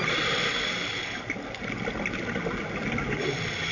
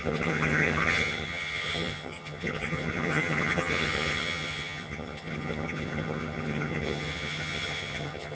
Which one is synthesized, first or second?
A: second